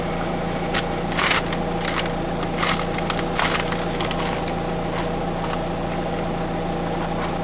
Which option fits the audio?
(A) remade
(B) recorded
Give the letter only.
B